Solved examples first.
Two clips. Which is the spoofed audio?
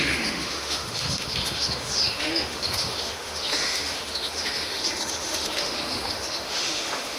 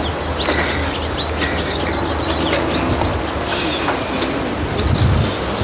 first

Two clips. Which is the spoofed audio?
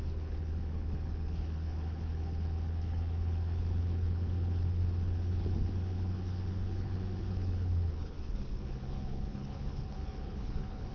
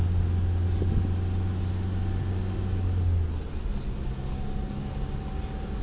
first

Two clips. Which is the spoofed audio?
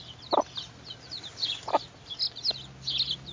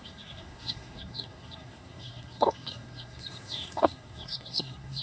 second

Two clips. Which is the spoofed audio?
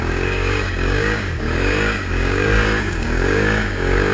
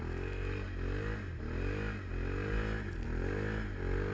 first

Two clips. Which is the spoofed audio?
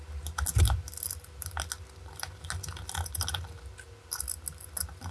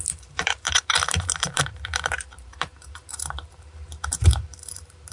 second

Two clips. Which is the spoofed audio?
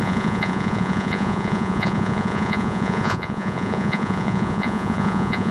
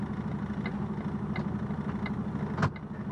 first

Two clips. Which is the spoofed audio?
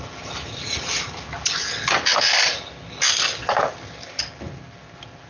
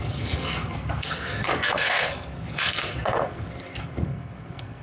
second